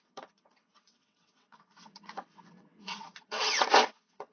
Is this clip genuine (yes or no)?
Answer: no